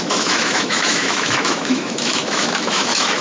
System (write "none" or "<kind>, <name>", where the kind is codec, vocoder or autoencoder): autoencoder, DAC-VAE